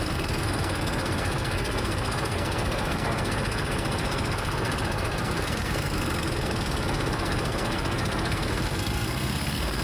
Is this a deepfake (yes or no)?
yes